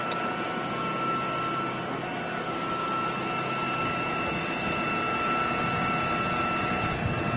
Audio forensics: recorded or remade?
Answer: recorded